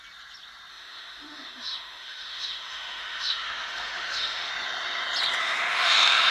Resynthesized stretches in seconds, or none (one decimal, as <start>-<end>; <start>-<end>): 0.7-4.5; 5.4-6.3